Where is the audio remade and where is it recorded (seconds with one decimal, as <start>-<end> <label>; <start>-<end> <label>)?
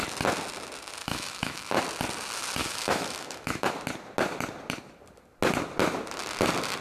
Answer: 0.0-1.0 recorded; 1.0-1.8 remade; 1.8-2.6 recorded; 2.6-3.7 remade; 3.7-6.8 recorded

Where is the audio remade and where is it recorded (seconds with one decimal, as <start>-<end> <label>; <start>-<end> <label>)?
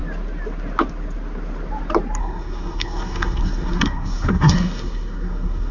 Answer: 0.0-2.2 recorded; 2.2-5.7 remade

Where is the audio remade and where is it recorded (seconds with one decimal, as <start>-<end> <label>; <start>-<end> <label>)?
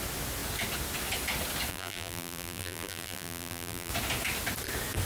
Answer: 0.0-1.7 recorded; 1.7-3.9 remade; 3.9-5.1 recorded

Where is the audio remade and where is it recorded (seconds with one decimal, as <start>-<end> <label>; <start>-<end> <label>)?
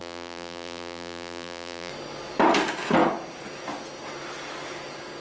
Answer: 0.0-1.9 remade; 1.9-5.2 recorded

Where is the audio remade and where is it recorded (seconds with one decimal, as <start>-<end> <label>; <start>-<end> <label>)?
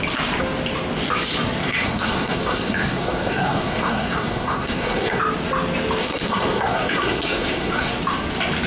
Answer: 0.0-1.6 recorded; 1.6-5.2 remade; 5.2-6.0 recorded; 6.0-8.0 remade; 8.0-8.7 recorded